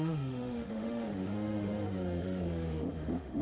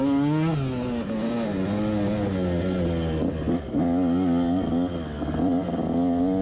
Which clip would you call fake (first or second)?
first